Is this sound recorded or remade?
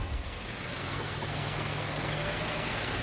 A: remade